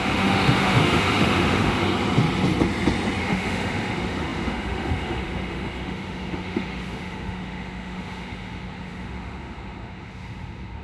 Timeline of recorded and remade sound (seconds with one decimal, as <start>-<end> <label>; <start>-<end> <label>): 0.0-1.8 remade; 1.8-3.2 recorded; 3.2-10.8 remade